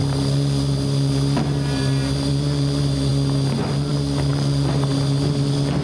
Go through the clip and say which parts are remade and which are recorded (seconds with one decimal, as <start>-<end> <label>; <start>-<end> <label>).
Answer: 0.0-5.8 recorded